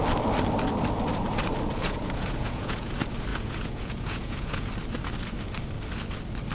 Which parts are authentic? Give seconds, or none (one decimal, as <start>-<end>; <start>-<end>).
0.0-1.8; 2.9-3.3; 4.7-6.5